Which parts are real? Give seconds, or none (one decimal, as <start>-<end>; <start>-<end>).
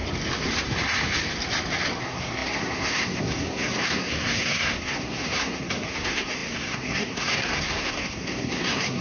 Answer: 0.0-2.0